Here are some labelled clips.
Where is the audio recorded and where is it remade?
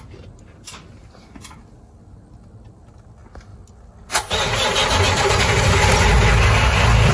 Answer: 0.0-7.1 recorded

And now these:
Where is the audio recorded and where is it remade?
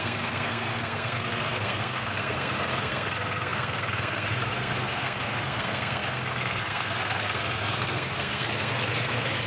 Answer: 0.0-9.5 remade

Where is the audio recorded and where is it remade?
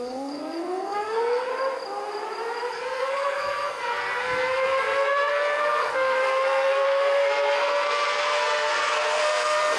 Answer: 0.0-1.5 remade; 1.5-2.7 recorded; 2.7-9.8 remade